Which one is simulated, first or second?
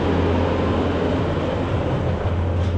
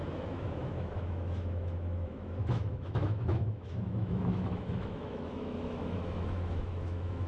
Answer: second